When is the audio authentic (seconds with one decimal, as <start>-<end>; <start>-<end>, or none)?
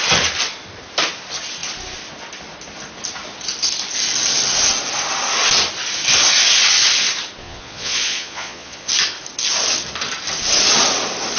0.0-7.4; 8.9-11.4